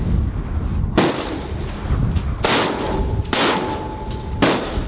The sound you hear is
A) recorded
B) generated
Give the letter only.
A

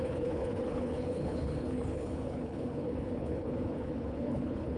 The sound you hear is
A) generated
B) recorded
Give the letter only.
A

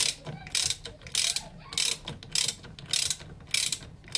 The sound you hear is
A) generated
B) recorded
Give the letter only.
B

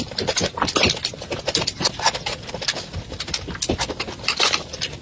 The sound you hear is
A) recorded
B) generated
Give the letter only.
A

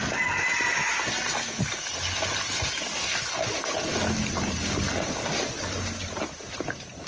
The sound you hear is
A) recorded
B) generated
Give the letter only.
A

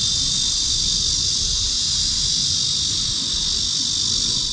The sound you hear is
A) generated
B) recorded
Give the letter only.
B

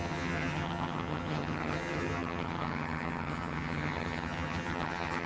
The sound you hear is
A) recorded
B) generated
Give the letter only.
B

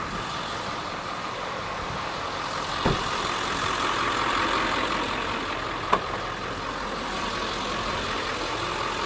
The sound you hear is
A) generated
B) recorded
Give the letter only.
B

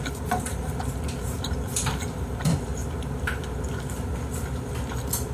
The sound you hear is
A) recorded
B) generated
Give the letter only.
A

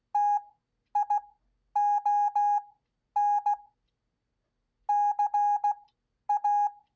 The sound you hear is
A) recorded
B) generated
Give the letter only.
A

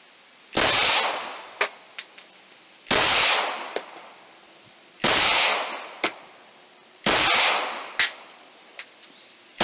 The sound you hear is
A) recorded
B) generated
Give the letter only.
A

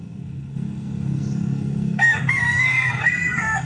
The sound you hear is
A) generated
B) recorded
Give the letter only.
A